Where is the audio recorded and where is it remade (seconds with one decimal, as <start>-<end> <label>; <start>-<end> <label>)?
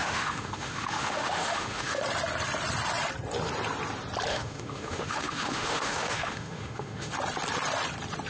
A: 0.0-2.0 remade; 2.0-4.3 recorded; 4.3-7.1 remade; 7.1-8.3 recorded